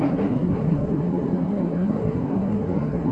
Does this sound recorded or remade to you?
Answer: remade